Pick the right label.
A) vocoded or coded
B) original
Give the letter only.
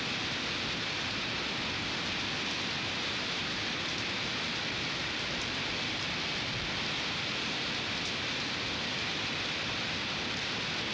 B